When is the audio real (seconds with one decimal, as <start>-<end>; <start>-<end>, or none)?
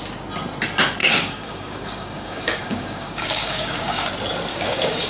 0.0-1.0; 4.1-4.5